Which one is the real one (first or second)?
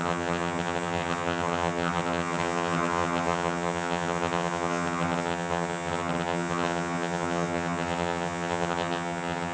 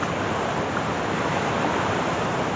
second